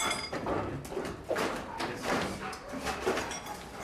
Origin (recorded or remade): recorded